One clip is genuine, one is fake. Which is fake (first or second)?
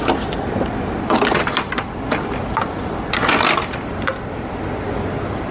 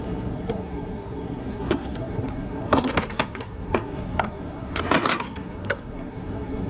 second